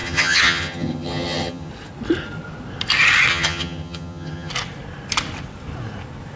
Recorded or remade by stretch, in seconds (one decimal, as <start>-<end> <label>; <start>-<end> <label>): 0.0-1.7 remade; 1.7-3.3 recorded; 3.3-4.5 remade; 4.5-6.4 recorded